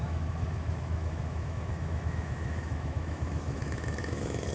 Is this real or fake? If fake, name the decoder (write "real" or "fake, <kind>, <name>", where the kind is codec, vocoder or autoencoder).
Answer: fake, autoencoder, DAC-VAE